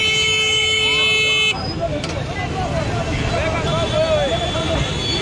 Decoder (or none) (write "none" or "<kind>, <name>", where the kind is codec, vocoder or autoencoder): none